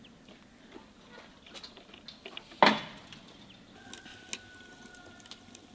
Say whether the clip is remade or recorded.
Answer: recorded